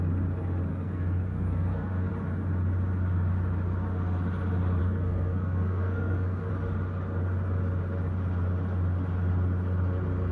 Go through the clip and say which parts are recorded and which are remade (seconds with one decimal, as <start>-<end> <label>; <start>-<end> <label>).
0.0-0.7 recorded; 0.7-2.1 remade; 2.1-4.8 recorded; 4.8-6.5 remade; 6.5-10.3 recorded